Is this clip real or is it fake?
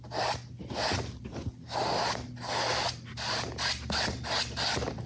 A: real